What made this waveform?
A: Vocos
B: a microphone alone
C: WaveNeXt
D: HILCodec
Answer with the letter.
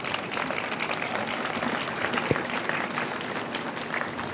B